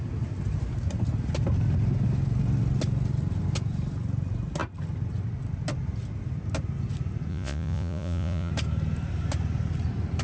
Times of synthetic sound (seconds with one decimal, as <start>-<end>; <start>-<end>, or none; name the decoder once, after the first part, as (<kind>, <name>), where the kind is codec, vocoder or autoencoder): 7.3-8.5 (vocoder, Vocos)